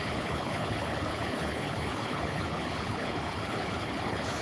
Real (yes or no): no